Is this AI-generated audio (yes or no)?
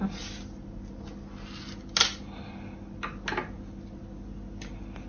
no